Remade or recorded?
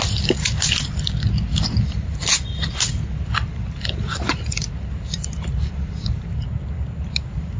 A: recorded